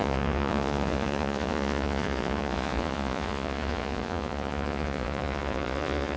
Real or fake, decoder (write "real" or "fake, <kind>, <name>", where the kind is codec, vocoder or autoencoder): fake, vocoder, Vocos